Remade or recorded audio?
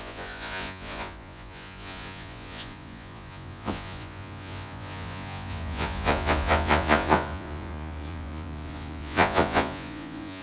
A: remade